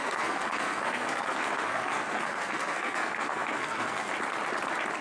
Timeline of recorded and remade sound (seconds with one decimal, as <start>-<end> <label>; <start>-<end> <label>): 0.0-4.1 remade; 4.1-5.0 recorded